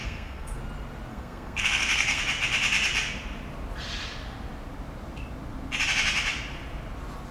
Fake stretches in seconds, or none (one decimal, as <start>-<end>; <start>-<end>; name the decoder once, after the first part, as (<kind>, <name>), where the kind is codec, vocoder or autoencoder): 0.0-0.6 (codec, SNAC); 1.1-2.2